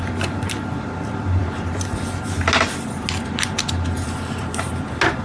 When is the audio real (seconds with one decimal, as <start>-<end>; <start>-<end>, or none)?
0.0-5.2